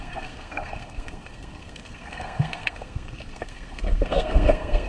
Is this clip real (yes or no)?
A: no